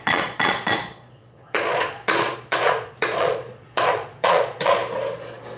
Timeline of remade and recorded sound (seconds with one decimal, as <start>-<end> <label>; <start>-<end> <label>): 0.0-4.8 remade; 4.8-5.6 recorded

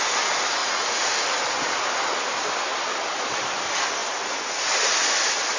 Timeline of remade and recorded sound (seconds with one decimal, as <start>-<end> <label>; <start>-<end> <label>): 0.0-0.6 recorded; 0.6-1.2 remade; 1.2-5.6 recorded

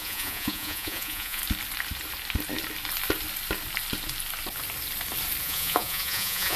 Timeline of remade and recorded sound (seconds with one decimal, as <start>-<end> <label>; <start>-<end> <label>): 0.0-1.4 remade; 1.4-5.4 recorded; 5.4-6.6 remade

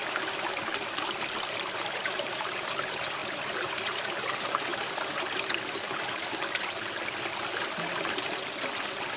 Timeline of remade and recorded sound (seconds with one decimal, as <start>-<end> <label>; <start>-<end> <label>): 0.0-9.2 recorded

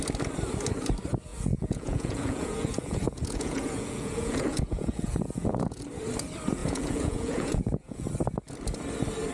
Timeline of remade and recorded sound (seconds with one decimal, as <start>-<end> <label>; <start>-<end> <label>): 0.0-1.3 recorded; 1.3-5.8 remade; 5.8-6.6 recorded; 6.6-8.1 remade; 8.1-9.3 recorded

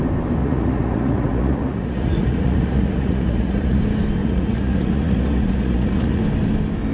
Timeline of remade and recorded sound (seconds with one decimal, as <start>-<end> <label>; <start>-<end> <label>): 0.0-0.4 recorded; 0.4-3.8 remade; 3.8-4.2 recorded; 4.2-6.2 remade; 6.2-6.9 recorded

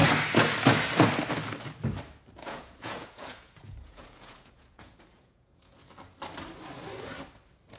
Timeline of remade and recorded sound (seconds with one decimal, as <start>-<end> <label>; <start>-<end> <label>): 0.0-2.4 recorded; 2.4-5.8 remade; 5.8-7.8 recorded

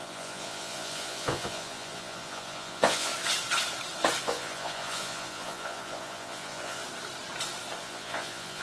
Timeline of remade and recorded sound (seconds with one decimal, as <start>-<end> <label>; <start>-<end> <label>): 0.0-3.1 remade; 3.1-4.2 recorded; 4.2-6.8 remade; 6.8-7.8 recorded; 7.8-8.6 remade